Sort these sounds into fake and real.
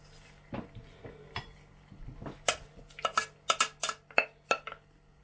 real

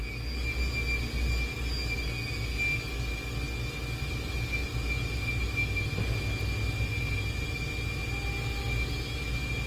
real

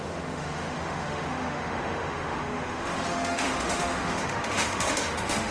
fake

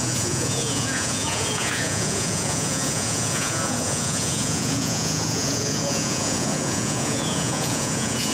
fake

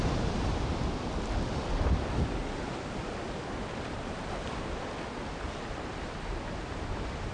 real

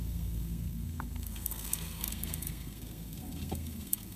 fake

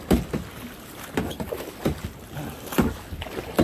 real